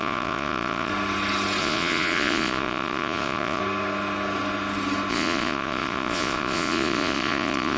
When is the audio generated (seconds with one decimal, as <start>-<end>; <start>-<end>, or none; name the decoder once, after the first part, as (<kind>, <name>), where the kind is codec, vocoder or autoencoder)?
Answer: 0.0-0.9 (vocoder, Vocos); 1.6-3.6; 5.1-7.8